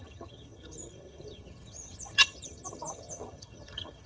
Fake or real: fake